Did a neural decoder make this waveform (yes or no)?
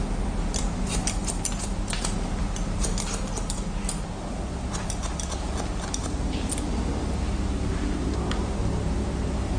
no